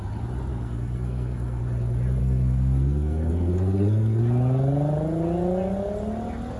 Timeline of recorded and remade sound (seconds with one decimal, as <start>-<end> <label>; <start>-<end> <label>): 0.0-0.5 recorded; 0.5-1.6 remade; 1.6-2.2 recorded; 2.2-4.2 remade; 4.2-6.6 recorded